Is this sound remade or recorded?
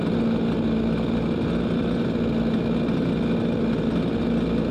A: recorded